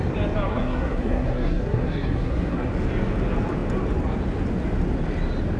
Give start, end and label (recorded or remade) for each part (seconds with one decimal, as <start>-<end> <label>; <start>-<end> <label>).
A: 0.0-0.5 recorded; 0.5-2.7 remade; 2.7-5.6 recorded